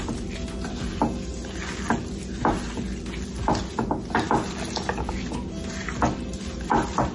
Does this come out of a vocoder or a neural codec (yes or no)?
no